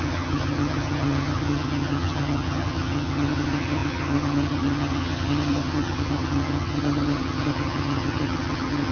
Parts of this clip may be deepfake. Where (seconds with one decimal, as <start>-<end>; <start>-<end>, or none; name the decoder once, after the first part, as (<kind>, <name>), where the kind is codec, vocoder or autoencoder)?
0.0-8.9 (vocoder, HiFi-GAN)